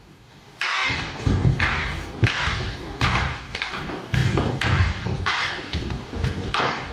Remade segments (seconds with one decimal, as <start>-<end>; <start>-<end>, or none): 0.0-6.9